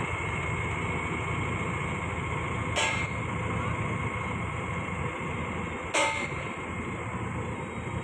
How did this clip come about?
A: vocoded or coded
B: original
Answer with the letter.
B